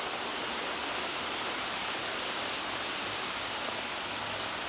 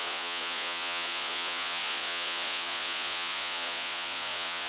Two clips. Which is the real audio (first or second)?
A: first